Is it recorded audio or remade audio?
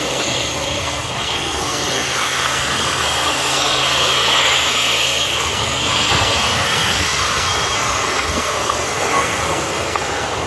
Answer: remade